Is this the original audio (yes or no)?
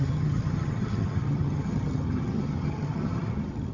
no